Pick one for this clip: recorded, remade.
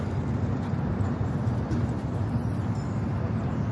recorded